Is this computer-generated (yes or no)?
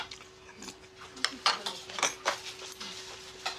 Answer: no